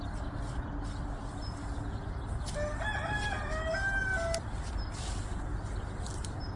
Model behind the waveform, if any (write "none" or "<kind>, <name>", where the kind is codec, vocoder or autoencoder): none